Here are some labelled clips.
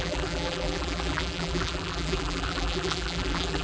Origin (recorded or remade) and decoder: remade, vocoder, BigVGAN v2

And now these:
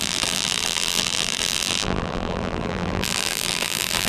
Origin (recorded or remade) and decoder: remade, vocoder, BigVGAN v2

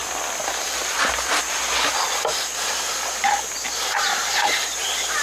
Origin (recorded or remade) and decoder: recorded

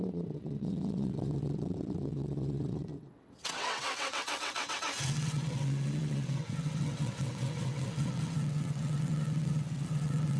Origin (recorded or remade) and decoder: remade, vocoder, WaveNeXt